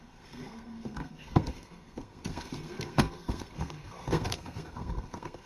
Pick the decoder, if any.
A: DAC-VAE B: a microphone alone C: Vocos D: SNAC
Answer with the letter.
D